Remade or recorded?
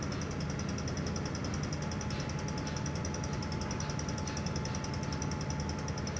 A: recorded